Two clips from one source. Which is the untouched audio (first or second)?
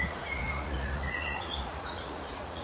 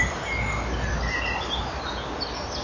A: second